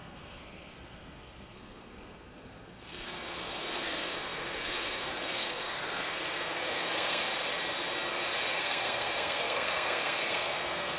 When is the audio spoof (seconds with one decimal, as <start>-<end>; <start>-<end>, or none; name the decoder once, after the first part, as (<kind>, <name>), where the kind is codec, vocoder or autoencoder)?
0.0-7.3 (codec, SNAC); 8.6-11.0